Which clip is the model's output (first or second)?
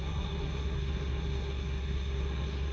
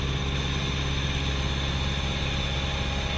first